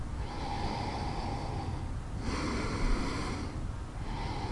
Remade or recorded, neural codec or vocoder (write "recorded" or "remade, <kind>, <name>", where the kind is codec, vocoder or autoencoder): recorded